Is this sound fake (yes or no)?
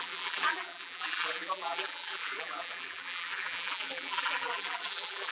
yes